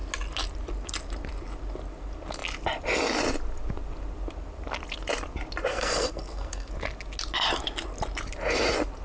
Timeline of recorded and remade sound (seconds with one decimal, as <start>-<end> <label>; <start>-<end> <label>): 0.0-5.7 recorded; 5.7-6.7 remade; 6.7-9.0 recorded